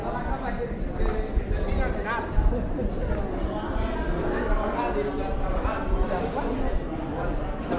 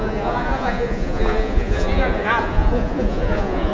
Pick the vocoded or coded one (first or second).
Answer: second